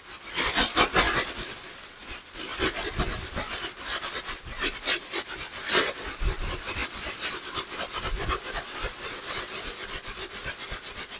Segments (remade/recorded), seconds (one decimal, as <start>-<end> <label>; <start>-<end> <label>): 0.0-11.2 recorded

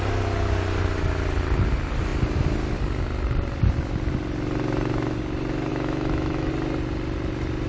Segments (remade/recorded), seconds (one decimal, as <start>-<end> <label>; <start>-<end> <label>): 0.0-5.7 recorded; 5.7-6.5 remade; 6.5-7.7 recorded

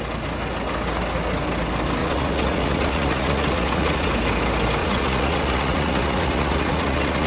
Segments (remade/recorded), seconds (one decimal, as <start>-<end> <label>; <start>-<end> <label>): 0.0-2.0 recorded; 2.0-4.1 remade; 4.1-4.8 recorded; 4.8-7.3 remade

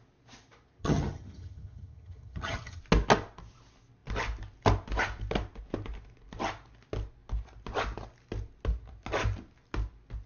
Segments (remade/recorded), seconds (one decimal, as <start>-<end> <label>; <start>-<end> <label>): 0.0-0.8 recorded; 0.8-2.8 remade; 2.8-10.3 recorded

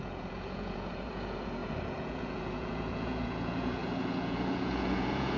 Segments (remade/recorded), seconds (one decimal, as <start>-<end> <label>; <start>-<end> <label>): 0.0-5.4 remade

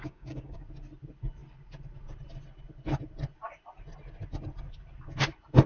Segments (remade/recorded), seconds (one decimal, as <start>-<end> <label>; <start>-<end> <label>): 0.0-0.6 remade; 0.6-5.7 recorded

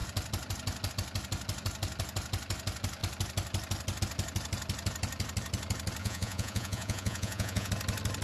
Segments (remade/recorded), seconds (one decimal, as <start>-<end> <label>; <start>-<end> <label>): 0.0-6.0 recorded; 6.0-7.7 remade; 7.7-8.2 recorded